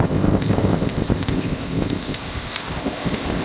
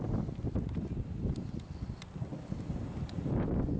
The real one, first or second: second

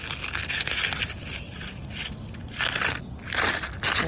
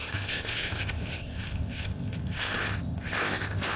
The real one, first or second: first